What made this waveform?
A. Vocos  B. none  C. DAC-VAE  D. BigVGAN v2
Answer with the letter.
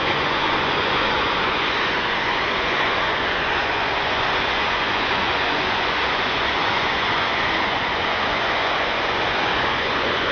A